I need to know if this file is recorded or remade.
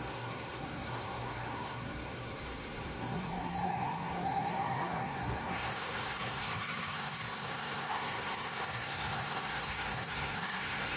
remade